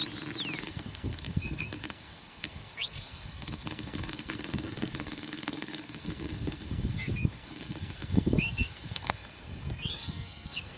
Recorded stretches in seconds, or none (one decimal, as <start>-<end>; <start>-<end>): 0.0-0.6